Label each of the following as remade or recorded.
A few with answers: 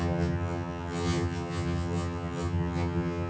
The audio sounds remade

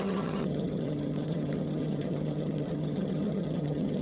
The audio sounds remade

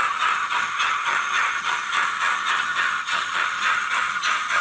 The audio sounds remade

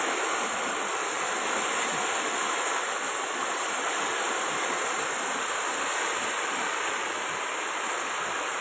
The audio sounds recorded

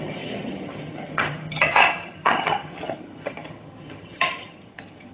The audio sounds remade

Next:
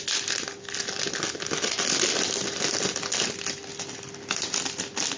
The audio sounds recorded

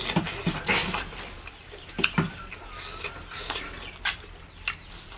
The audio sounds recorded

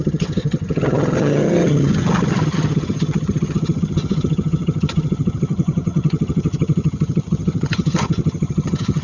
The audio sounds remade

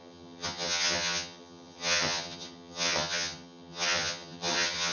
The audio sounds remade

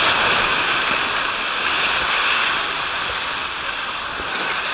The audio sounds recorded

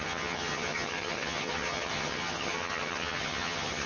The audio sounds remade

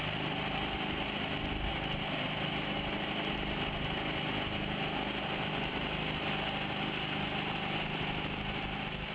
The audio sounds recorded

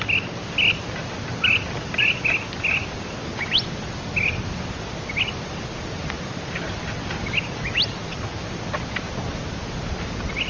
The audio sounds recorded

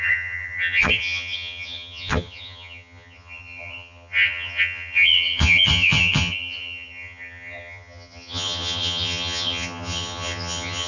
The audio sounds remade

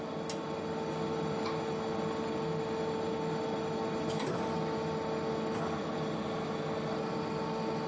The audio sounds recorded